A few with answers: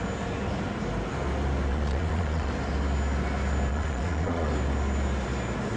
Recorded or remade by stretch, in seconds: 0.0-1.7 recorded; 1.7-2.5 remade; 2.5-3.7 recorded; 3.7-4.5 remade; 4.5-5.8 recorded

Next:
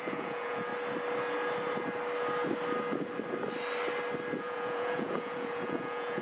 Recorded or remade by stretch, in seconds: 0.0-0.7 remade; 0.7-4.4 recorded; 4.4-6.2 remade

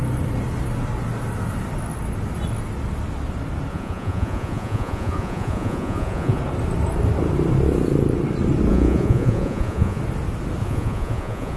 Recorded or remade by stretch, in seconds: 0.0-3.7 recorded; 3.7-6.4 remade; 6.4-8.7 recorded; 8.7-10.0 remade; 10.0-10.6 recorded; 10.6-11.6 remade

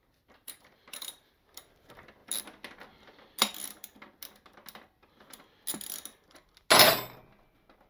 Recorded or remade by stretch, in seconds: 0.0-0.4 recorded; 0.4-1.4 remade; 1.4-7.9 recorded

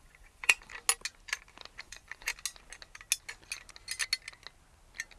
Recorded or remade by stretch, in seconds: 0.0-0.7 remade; 0.7-1.8 recorded; 1.8-2.3 remade; 2.3-5.2 recorded

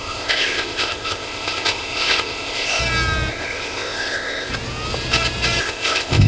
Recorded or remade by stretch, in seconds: 0.0-2.8 remade; 2.8-3.3 recorded; 3.3-4.5 remade; 4.5-5.6 recorded; 5.6-6.3 remade

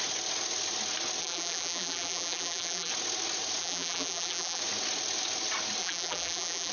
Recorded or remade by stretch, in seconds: 0.0-1.2 recorded; 1.2-2.9 remade; 2.9-3.6 recorded; 3.6-4.6 remade; 4.6-5.8 recorded; 5.8-6.7 remade